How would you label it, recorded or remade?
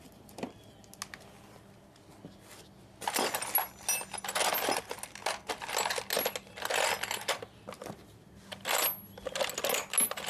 recorded